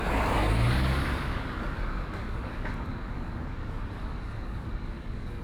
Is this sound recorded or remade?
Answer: remade